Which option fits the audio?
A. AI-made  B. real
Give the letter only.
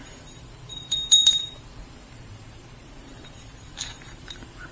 A